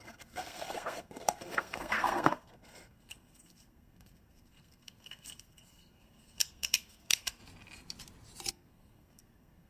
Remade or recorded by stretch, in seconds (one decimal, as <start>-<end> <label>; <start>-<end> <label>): 0.0-7.4 remade; 7.4-8.5 recorded; 8.5-9.7 remade